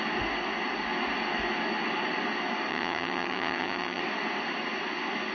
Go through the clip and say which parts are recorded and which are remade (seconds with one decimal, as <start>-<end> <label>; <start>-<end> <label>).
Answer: 0.0-2.7 recorded; 2.7-4.0 remade; 4.0-5.3 recorded